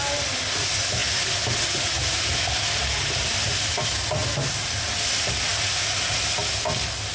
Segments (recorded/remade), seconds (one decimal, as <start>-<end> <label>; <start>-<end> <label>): 0.0-7.1 recorded